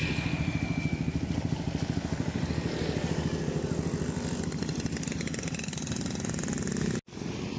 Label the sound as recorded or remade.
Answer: recorded